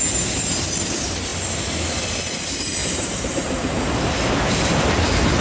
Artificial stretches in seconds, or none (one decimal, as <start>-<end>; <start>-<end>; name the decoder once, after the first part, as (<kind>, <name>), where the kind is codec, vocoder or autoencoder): 2.8-4.9 (vocoder, BigVGAN v2)

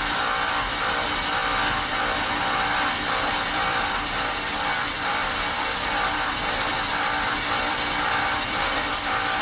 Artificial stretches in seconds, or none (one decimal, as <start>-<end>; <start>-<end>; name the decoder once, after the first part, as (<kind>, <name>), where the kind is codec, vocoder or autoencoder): 0.0-1.4 (vocoder, BigVGAN v2); 3.1-9.4